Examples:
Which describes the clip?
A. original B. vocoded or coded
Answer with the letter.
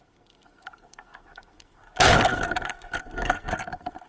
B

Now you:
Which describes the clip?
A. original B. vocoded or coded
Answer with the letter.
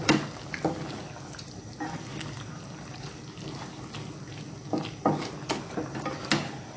A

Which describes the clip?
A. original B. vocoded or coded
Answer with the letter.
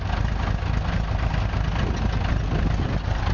A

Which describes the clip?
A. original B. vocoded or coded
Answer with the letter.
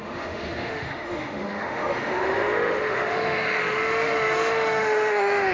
B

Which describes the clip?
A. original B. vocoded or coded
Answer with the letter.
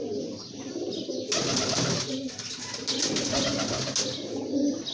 A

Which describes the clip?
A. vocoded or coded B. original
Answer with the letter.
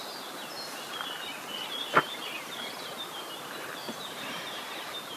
B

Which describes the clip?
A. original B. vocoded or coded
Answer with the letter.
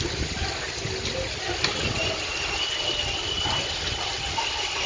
A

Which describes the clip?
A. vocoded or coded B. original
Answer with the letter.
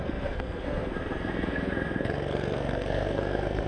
A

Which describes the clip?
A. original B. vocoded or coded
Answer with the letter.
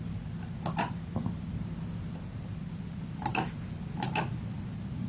A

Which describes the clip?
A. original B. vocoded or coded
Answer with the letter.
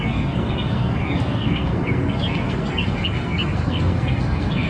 B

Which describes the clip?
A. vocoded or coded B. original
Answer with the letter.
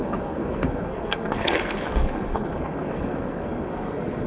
A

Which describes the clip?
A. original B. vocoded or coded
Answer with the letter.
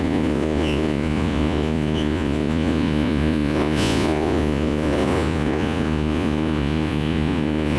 B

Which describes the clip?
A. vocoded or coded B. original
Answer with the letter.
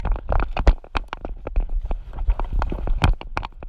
B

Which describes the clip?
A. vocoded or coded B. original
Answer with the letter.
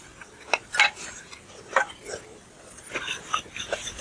B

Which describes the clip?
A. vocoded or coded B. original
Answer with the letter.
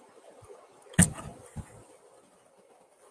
B